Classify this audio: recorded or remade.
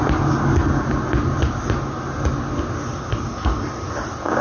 recorded